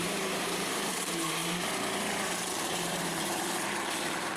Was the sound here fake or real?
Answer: fake